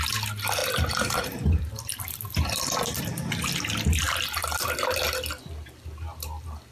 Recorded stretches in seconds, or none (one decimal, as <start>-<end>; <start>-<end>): 0.0-0.6; 3.0-6.7